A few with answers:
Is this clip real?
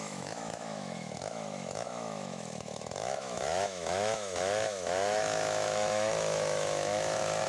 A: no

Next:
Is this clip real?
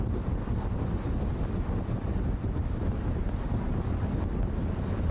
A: yes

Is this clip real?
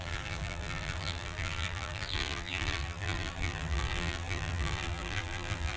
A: no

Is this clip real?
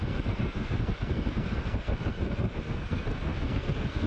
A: no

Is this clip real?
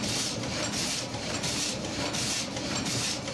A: no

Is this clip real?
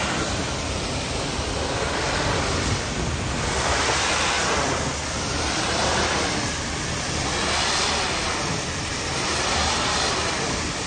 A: no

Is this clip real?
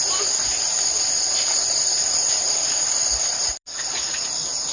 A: yes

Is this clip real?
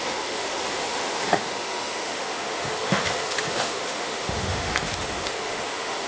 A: no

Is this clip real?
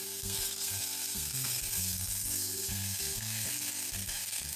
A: no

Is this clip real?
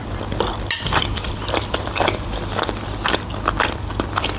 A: yes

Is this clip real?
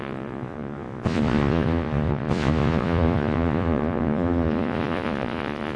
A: no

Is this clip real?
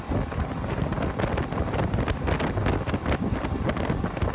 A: yes